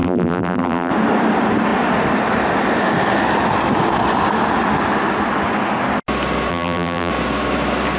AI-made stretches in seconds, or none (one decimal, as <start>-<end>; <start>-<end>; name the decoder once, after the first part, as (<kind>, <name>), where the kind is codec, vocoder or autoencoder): 0.0-0.9 (vocoder, BigVGAN v2); 6.5-7.1